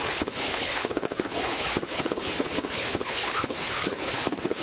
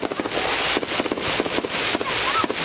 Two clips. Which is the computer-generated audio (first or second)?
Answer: first